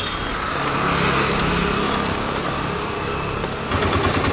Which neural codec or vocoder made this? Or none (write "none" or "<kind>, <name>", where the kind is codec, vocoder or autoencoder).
none